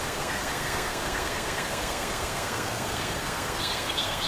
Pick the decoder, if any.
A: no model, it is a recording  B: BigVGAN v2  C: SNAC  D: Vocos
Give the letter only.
C